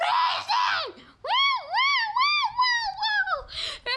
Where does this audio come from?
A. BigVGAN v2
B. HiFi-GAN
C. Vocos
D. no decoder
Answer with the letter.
D